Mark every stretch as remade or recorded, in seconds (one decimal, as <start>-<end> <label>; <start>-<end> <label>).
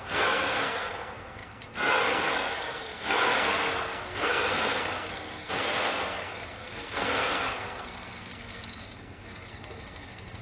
0.0-10.4 remade